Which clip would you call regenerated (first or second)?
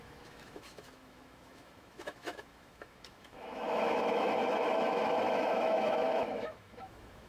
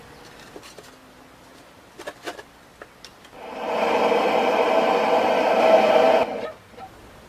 first